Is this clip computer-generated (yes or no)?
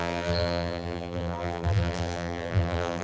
yes